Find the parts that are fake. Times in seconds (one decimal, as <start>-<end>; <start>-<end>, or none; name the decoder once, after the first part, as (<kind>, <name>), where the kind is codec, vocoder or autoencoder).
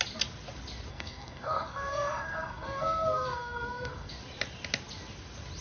0.9-4.1 (codec, SNAC)